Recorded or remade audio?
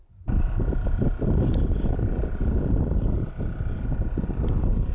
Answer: recorded